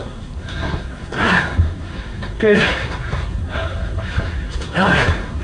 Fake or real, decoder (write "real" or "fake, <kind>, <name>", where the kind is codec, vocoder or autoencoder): fake, codec, SNAC